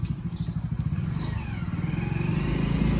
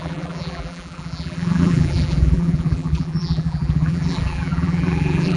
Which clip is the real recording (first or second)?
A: first